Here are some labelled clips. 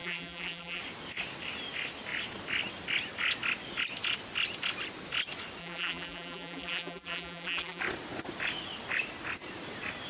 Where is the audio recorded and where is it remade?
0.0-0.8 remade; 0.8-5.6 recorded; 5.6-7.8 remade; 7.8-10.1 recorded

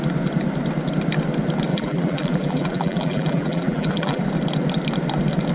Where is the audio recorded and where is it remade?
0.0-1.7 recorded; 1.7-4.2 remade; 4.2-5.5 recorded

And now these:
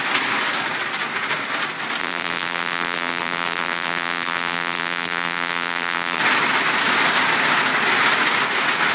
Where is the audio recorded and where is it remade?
0.0-2.0 recorded; 2.0-6.2 remade; 6.2-8.9 recorded